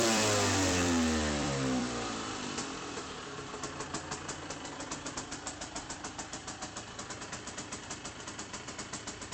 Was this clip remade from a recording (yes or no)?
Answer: yes